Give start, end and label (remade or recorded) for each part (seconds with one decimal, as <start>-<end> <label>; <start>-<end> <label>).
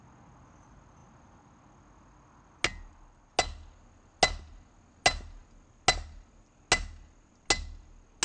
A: 0.0-8.2 recorded